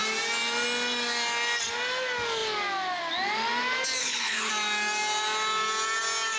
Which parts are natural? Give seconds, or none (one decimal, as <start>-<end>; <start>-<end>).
0.0-4.0; 4.5-6.4